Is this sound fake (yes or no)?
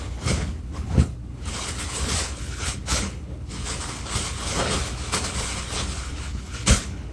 yes